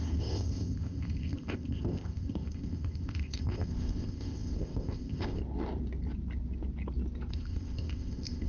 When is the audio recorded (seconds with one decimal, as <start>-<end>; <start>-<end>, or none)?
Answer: 5.4-7.3